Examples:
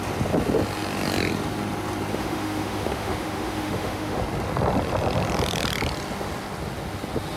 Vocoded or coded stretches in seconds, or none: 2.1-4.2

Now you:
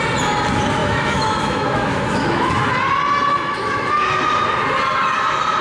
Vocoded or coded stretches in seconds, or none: 0.8-2.5; 3.3-3.9

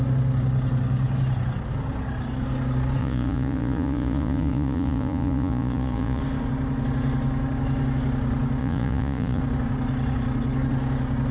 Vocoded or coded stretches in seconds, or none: 3.0-6.2; 8.6-9.4